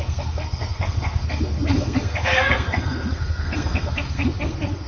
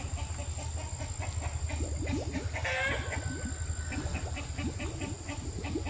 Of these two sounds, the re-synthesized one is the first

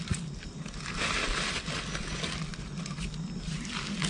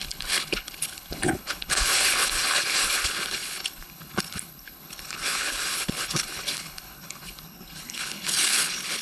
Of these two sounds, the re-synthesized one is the second